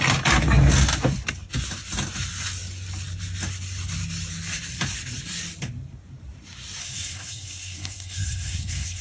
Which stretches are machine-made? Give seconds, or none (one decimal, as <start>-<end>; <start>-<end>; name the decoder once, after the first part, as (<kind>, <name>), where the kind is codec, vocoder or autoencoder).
6.8-9.0 (codec, SNAC)

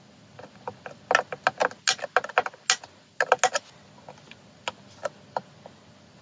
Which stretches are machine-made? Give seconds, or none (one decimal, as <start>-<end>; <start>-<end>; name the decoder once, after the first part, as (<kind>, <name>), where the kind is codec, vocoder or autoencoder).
none